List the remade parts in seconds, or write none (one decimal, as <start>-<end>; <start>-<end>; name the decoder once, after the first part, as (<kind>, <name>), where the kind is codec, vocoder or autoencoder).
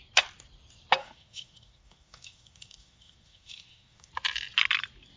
1.0-4.1 (autoencoder, DAC-VAE)